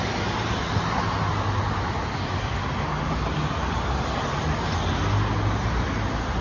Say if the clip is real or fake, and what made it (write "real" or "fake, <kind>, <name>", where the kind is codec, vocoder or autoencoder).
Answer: real